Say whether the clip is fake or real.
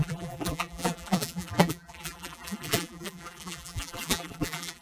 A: fake